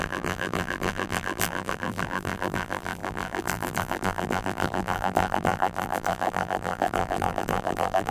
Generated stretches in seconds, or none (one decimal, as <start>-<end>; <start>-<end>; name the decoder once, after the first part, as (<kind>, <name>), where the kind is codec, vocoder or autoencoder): 0.0-8.1 (vocoder, BigVGAN v2)